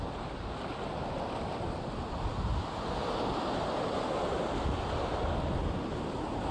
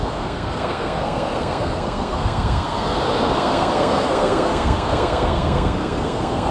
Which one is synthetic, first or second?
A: second